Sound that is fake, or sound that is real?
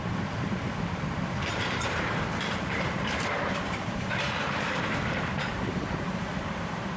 fake